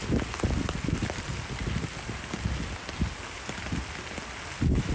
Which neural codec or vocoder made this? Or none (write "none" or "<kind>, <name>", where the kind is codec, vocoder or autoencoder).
none